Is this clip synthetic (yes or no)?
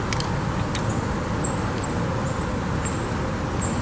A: no